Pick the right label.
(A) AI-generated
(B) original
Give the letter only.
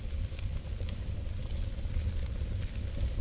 B